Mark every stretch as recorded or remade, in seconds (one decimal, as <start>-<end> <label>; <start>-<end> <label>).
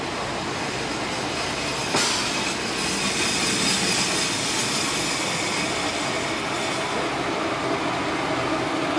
0.0-9.0 recorded